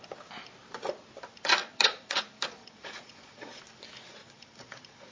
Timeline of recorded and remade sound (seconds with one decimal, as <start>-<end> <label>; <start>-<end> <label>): 0.0-1.6 recorded; 1.6-2.2 remade; 2.2-2.6 recorded; 2.6-3.6 remade; 3.6-4.2 recorded; 4.2-5.1 remade

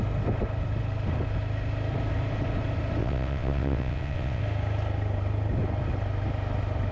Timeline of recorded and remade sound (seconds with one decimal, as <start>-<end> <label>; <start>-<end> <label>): 0.0-3.0 recorded; 3.0-4.4 remade; 4.4-6.9 recorded